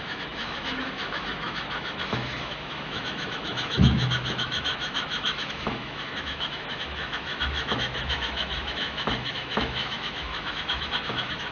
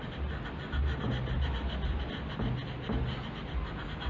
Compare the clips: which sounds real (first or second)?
second